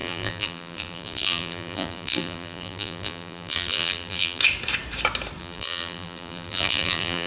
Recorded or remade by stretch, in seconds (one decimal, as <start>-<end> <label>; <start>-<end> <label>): 0.0-4.4 remade; 4.4-5.4 recorded; 5.4-7.3 remade

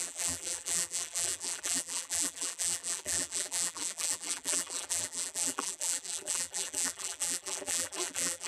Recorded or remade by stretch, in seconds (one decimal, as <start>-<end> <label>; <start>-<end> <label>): 0.0-8.5 remade

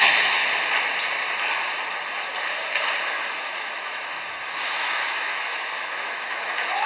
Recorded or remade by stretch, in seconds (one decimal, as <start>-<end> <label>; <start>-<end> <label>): 0.0-0.4 remade; 0.4-3.1 recorded; 3.1-6.9 remade

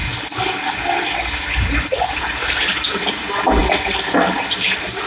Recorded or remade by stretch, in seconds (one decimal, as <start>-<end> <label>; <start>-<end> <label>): 0.0-5.1 recorded

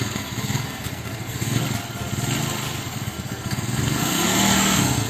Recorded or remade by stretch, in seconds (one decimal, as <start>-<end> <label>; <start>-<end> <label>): 0.0-1.6 remade; 1.6-2.8 recorded; 2.8-5.1 remade

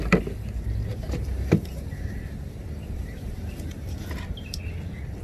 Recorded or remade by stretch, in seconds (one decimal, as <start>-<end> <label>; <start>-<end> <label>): 0.0-0.9 recorded; 0.9-4.0 remade; 4.0-5.2 recorded